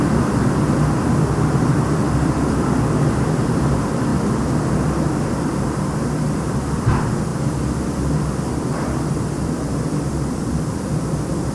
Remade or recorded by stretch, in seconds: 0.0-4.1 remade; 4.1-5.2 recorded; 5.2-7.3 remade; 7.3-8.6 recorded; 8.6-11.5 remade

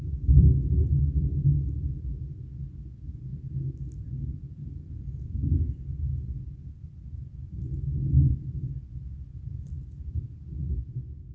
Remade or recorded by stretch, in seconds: 0.0-11.3 recorded

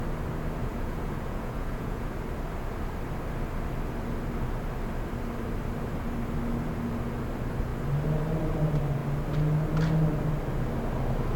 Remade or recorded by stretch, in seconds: 0.0-0.6 recorded; 0.6-2.1 remade; 2.1-11.4 recorded